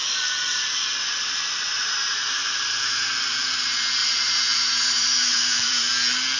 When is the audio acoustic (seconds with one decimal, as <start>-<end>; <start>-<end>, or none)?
3.6-4.0; 5.9-6.4